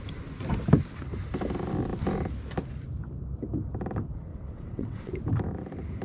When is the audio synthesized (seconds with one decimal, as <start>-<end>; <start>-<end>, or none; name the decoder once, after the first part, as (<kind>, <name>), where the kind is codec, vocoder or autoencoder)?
4.3-5.1 (vocoder, WaveNeXt)